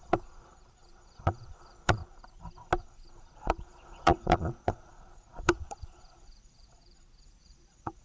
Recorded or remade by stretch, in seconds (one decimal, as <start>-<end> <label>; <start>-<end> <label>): 0.0-2.0 remade; 2.0-2.8 recorded; 2.8-8.0 remade